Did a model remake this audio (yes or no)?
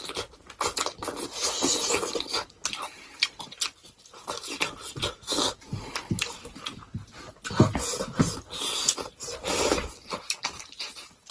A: no